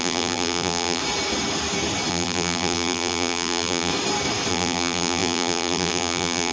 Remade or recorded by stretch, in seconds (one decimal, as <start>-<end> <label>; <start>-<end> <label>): 0.0-1.0 remade; 1.0-2.1 recorded; 2.1-3.9 remade; 3.9-4.5 recorded; 4.5-6.5 remade